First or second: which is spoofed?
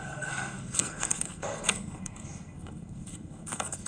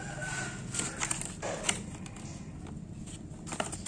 first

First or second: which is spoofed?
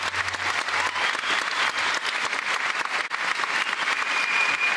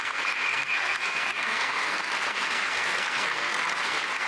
second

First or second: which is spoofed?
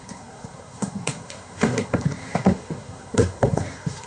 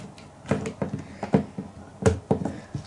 first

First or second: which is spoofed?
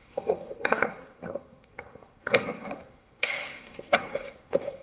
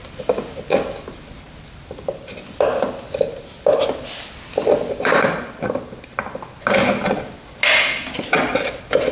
first